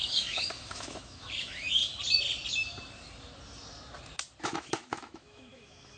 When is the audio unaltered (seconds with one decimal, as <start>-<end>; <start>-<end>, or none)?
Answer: 1.8-4.4